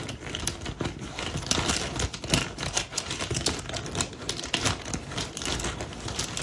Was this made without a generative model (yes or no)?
yes